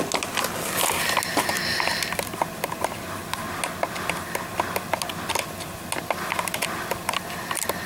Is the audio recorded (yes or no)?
yes